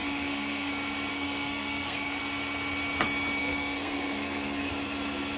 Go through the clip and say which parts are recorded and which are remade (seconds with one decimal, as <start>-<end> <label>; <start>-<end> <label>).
0.0-0.7 remade; 0.7-1.1 recorded; 1.1-2.2 remade; 2.2-3.4 recorded; 3.4-4.7 remade; 4.7-5.4 recorded